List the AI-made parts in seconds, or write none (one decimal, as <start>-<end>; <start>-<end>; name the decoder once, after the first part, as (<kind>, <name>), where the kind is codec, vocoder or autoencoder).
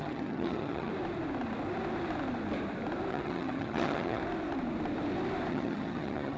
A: 0.0-0.9 (vocoder, HiFi-GAN); 3.1-4.2; 5.5-6.4